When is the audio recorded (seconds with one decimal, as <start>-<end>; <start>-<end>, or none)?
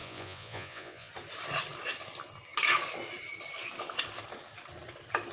1.1-5.3